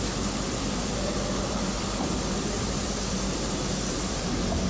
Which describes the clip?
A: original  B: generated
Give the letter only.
B